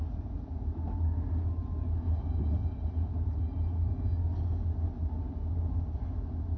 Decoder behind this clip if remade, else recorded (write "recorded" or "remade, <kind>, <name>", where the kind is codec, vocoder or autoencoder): recorded